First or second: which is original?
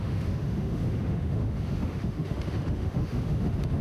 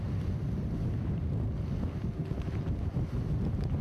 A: second